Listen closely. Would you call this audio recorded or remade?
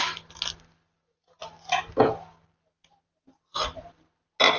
recorded